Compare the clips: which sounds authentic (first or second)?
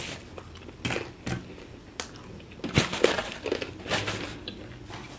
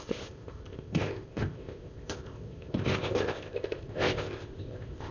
first